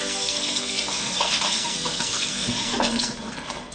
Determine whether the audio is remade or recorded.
remade